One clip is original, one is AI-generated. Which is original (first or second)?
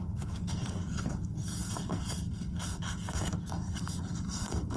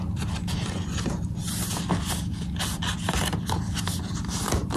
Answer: second